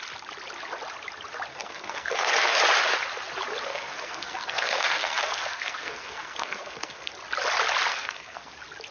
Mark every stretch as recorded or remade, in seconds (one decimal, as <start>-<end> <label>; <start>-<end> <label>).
0.0-1.5 recorded; 1.5-2.6 remade; 2.6-3.7 recorded; 3.7-7.1 remade; 7.1-7.9 recorded; 7.9-8.5 remade; 8.5-8.9 recorded